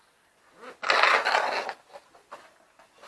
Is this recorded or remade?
recorded